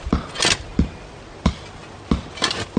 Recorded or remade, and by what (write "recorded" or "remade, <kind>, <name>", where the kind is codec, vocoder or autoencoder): recorded